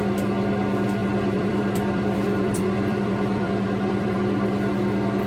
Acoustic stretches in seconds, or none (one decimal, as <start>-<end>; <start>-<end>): 0.0-1.0; 4.2-5.3